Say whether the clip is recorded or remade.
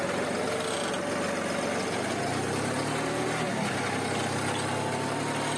recorded